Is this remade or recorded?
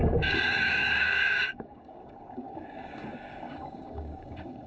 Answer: remade